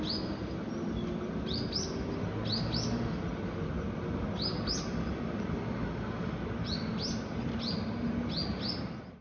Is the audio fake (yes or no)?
no